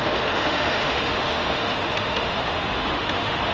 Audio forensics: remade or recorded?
remade